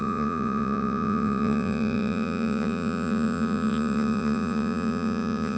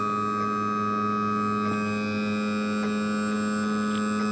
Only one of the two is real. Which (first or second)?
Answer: second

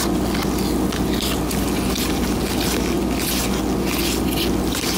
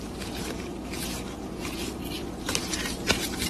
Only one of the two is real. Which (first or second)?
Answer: first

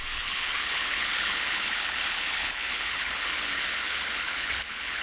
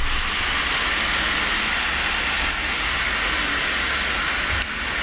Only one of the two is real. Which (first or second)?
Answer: second